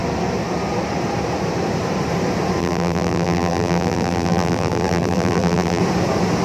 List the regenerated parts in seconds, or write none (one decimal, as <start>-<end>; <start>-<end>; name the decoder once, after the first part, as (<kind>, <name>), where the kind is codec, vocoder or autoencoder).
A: 2.6-5.8 (vocoder, BigVGAN v2)